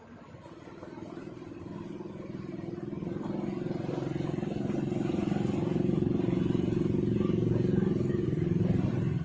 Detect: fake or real real